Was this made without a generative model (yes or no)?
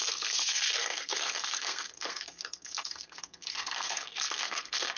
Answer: no